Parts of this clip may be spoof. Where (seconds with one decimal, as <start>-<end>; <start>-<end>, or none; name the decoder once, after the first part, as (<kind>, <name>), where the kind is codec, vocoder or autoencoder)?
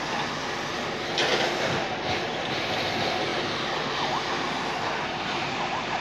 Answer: 1.3-2.3 (vocoder, BigVGAN v2)